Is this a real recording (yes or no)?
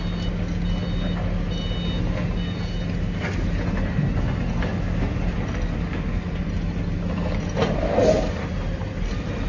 yes